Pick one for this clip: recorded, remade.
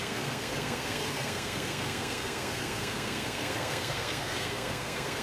remade